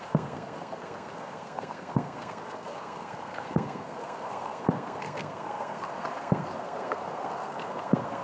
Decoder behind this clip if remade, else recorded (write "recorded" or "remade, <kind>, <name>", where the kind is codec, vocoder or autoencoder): remade, codec, SNAC